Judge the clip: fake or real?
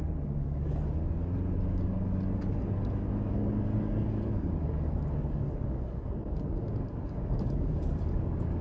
fake